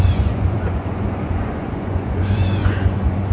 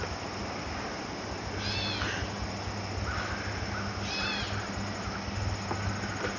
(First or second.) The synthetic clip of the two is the first